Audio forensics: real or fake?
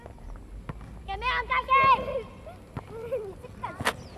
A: real